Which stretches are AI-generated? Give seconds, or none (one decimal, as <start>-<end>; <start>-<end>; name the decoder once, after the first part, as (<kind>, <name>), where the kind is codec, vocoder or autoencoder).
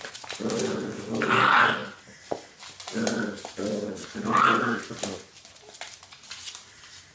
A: none